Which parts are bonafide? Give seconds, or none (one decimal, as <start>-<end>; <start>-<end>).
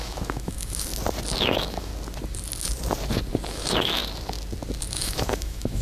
0.9-1.4; 1.9-3.5; 4.0-4.9